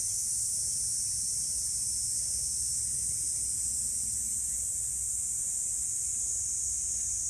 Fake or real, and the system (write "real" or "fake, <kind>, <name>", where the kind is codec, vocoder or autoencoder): real